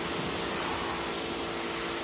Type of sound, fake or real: real